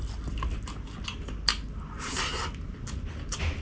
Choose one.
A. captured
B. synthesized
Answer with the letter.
A